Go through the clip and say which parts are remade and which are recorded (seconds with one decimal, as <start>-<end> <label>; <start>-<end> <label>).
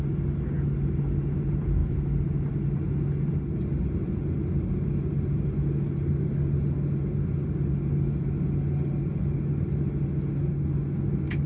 0.0-11.5 recorded